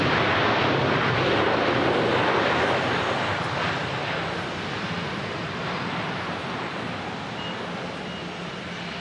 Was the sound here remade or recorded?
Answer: recorded